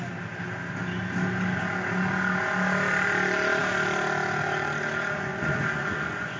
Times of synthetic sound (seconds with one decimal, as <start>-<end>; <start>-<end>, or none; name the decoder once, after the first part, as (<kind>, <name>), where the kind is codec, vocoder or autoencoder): 5.3-6.4 (vocoder, Vocos)